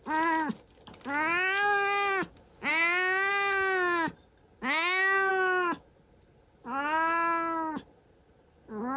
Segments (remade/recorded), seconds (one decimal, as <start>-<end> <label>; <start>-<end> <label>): 0.0-2.7 recorded; 2.7-3.3 remade; 3.3-4.6 recorded; 4.6-5.3 remade; 5.3-9.0 recorded